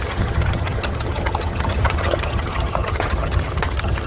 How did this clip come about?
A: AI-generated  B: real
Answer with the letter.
A